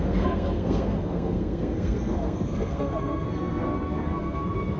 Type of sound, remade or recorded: remade